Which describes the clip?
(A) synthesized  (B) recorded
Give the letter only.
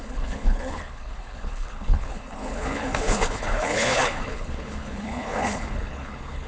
A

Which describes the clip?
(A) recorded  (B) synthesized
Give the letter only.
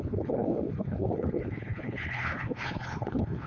B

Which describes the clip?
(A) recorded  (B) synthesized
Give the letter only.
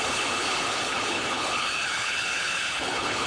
B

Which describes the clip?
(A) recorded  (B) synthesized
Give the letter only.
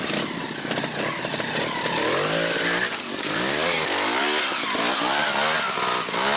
A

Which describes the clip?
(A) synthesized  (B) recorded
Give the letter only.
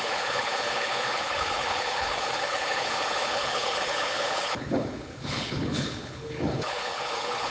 A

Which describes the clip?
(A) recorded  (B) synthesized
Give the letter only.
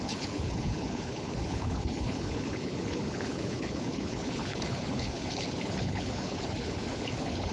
B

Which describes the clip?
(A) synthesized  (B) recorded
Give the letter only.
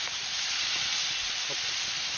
B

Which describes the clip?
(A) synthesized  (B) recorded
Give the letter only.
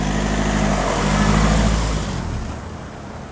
B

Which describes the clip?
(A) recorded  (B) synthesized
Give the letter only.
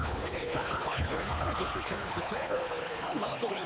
B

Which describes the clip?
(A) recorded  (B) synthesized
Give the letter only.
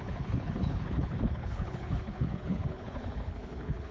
B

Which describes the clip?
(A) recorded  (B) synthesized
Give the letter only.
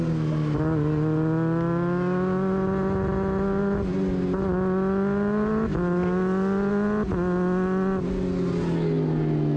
A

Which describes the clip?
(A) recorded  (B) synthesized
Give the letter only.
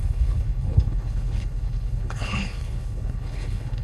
B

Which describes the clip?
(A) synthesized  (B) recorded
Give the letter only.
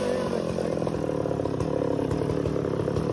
B